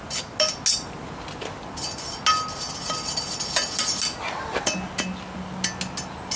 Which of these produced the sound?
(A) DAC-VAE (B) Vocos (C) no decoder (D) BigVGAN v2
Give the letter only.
C